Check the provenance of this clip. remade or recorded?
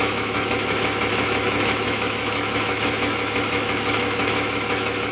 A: remade